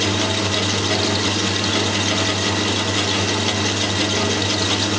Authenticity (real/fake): real